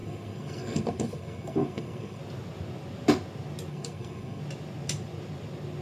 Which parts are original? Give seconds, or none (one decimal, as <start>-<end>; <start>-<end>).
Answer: 2.2-3.7; 4.4-5.8